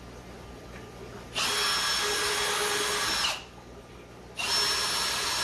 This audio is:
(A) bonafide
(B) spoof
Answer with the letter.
A